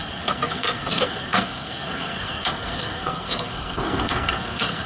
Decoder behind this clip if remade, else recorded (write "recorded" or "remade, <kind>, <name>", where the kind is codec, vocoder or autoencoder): remade, codec, SNAC